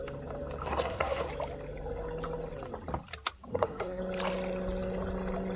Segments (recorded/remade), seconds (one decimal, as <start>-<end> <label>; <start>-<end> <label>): 0.0-0.6 recorded; 0.6-1.3 remade; 1.3-3.5 recorded; 3.5-4.0 remade; 4.0-5.6 recorded